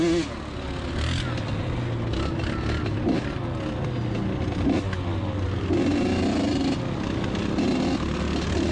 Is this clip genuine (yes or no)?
yes